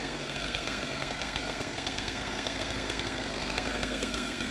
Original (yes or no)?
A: no